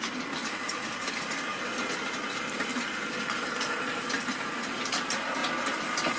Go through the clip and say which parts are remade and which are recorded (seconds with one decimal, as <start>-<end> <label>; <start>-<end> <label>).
0.0-6.2 recorded